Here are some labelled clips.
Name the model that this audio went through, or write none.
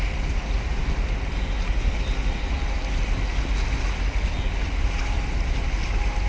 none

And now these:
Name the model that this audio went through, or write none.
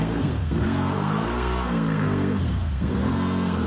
codec, SNAC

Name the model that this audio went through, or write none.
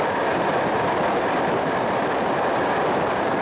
none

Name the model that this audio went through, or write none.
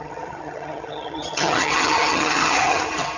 vocoder, HiFi-GAN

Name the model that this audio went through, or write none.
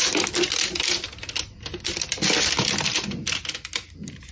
none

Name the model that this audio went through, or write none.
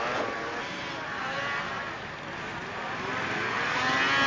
none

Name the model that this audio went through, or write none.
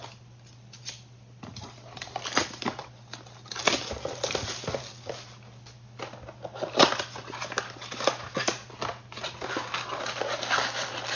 none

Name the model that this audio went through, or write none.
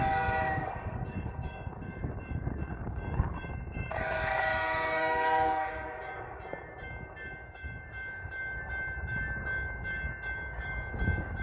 codec, DAC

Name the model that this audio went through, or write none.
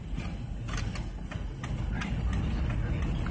none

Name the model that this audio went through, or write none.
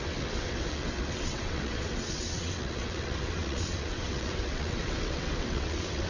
vocoder, WaveNeXt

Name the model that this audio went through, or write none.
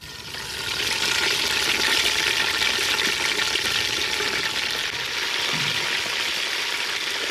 none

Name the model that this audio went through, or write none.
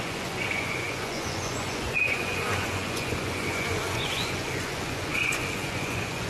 vocoder, Vocos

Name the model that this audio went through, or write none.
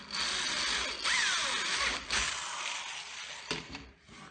none